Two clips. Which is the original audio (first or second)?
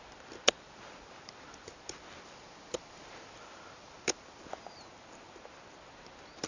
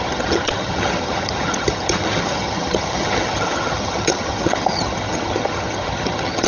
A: first